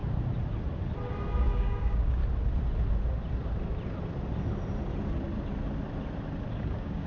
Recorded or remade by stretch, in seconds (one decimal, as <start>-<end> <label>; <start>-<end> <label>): 0.0-1.4 recorded; 1.4-2.2 remade; 2.2-6.5 recorded; 6.5-7.1 remade